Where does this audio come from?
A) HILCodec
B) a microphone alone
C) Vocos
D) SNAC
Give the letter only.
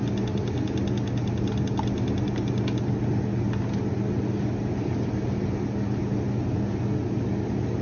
B